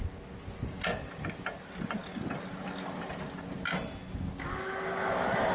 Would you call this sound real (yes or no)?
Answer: yes